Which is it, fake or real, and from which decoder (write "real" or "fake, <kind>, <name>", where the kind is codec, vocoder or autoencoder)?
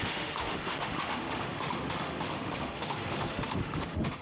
fake, autoencoder, DAC-VAE